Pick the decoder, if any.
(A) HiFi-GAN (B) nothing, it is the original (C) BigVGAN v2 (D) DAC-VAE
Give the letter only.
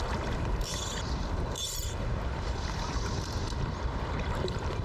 C